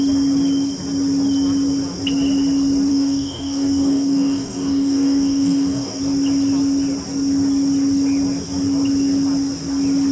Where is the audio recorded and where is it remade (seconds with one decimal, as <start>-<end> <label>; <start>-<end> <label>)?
0.0-2.9 recorded; 2.9-6.0 remade; 6.0-10.1 recorded